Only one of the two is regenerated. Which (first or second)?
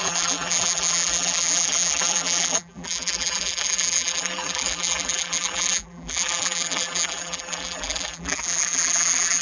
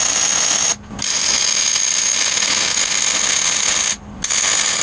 first